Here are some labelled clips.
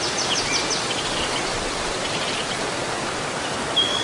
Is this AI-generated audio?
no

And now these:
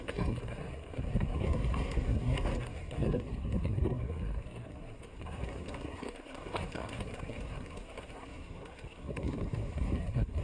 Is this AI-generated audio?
yes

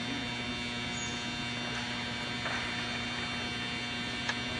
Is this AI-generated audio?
no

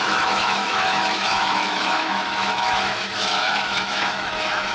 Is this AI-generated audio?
yes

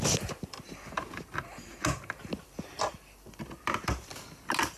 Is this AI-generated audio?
no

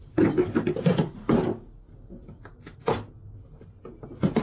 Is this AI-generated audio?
no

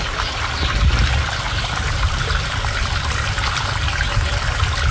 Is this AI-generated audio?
no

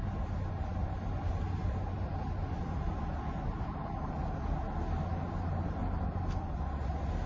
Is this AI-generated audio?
no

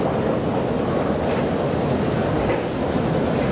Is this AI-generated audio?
no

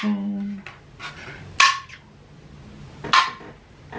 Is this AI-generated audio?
no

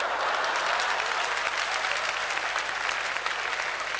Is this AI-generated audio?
no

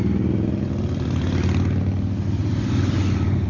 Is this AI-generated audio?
no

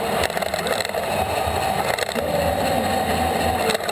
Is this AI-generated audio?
no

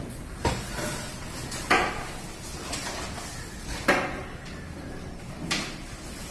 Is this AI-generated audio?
no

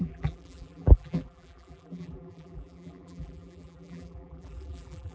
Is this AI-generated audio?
yes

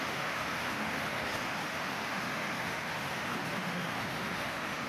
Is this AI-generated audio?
yes